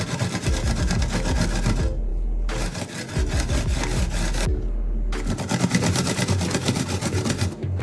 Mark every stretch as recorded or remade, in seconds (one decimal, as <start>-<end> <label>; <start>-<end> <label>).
0.0-7.8 recorded

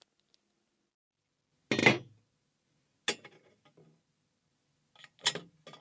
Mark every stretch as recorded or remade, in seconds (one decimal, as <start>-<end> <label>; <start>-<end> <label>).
0.0-5.8 recorded